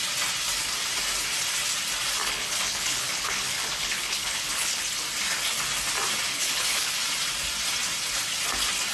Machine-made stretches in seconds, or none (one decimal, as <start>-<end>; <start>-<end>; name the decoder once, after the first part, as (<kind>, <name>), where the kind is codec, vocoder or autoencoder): 2.2-4.8 (codec, HILCodec); 6.3-6.9